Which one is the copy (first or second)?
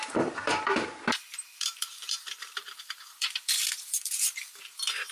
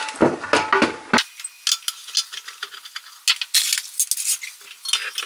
first